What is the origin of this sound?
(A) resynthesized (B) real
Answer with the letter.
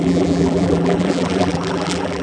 A